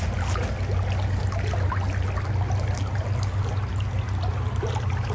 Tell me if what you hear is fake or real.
real